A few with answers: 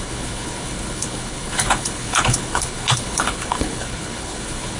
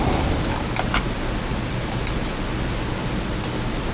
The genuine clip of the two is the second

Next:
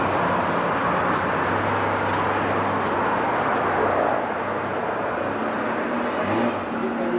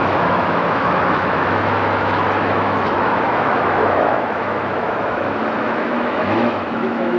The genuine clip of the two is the first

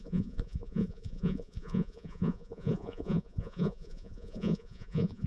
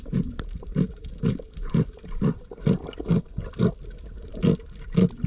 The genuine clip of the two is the second